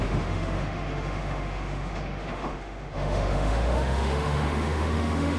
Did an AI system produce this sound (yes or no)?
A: yes